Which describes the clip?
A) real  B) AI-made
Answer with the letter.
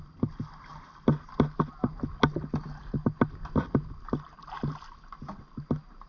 A